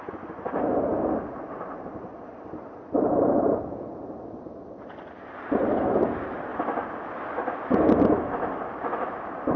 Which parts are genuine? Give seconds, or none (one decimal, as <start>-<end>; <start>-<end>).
0.0-9.6